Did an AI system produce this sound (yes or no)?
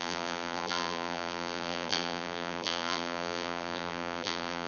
yes